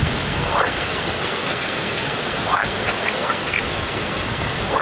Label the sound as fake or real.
fake